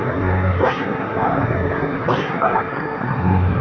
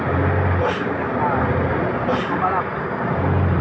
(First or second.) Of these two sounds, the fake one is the first